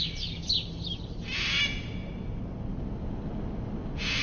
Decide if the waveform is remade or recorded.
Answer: recorded